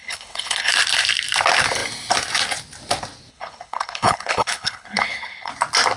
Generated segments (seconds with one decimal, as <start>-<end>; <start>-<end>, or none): 0.0-0.7; 3.3-5.5